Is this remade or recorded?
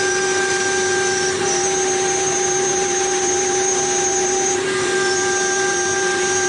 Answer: remade